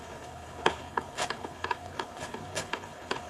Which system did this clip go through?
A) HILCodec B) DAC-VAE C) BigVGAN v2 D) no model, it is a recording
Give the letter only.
A